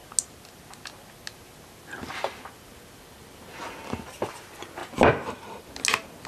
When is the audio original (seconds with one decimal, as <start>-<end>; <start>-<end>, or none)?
0.0-3.0; 4.8-6.3